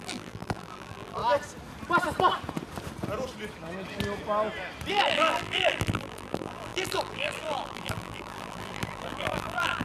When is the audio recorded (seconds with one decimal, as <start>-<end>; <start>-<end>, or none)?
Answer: 1.2-4.9